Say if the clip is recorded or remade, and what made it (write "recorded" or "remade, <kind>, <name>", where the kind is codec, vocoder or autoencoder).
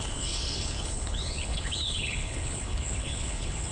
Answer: remade, codec, HILCodec